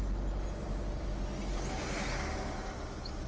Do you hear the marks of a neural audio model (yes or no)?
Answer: no